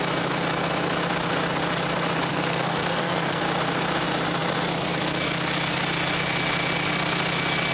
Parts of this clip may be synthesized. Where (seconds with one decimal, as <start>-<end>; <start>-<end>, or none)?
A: 2.3-3.4